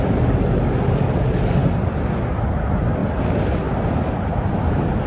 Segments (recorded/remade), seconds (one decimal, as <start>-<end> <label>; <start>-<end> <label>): 0.0-5.1 recorded